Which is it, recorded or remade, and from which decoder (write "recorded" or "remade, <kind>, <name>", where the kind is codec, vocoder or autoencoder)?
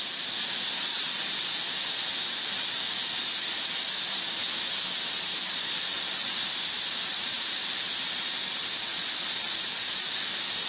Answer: recorded